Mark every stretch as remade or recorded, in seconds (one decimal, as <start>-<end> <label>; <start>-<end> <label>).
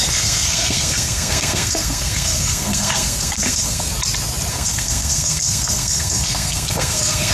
0.0-3.9 remade; 3.9-4.5 recorded; 4.5-7.3 remade